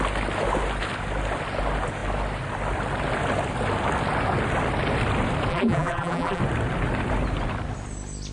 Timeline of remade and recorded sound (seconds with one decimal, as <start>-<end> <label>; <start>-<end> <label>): 0.0-5.5 recorded; 5.5-6.4 remade; 6.4-8.3 recorded